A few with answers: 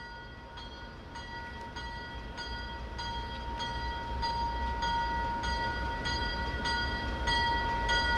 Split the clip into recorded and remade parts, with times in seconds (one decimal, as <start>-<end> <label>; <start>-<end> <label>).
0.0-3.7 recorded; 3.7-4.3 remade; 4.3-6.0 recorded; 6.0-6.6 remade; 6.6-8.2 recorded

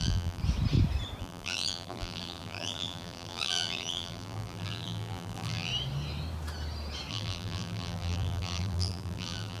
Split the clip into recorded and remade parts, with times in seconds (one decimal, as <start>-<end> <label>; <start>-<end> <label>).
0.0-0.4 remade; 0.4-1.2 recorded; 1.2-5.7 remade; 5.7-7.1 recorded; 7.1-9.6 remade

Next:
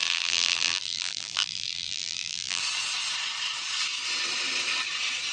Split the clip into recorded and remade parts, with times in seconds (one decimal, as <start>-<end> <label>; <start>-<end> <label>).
0.0-2.6 remade; 2.6-5.3 recorded

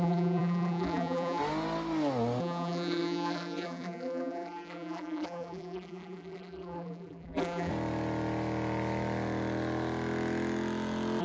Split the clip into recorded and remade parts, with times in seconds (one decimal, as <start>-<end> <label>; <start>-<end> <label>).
0.0-1.4 remade; 1.4-2.4 recorded; 2.4-7.7 remade; 7.7-11.2 recorded